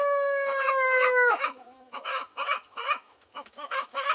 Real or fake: fake